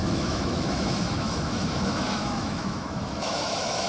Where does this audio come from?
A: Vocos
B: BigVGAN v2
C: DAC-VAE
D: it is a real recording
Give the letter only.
C